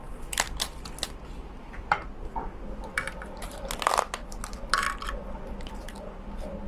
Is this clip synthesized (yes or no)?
no